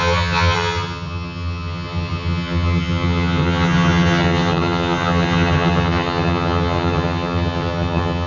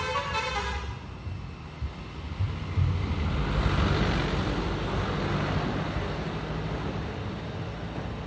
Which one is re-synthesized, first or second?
first